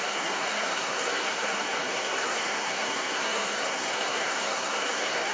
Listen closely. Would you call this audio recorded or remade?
remade